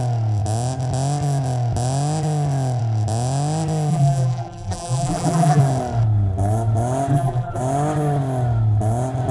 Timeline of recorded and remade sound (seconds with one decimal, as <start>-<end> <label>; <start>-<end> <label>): 0.0-3.9 recorded; 3.9-5.6 remade; 5.6-7.1 recorded; 7.1-7.6 remade; 7.6-9.3 recorded